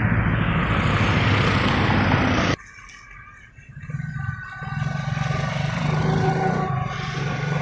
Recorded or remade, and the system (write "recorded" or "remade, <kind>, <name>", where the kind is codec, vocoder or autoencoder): recorded